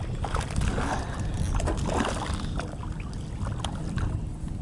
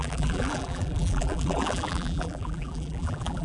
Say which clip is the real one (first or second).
first